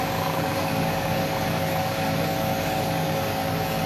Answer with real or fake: fake